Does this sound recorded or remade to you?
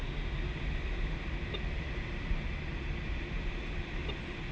recorded